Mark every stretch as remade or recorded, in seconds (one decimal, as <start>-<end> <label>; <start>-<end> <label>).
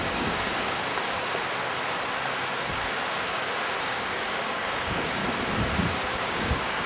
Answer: 0.0-0.9 remade; 0.9-3.8 recorded; 3.8-5.2 remade; 5.2-6.3 recorded; 6.3-6.9 remade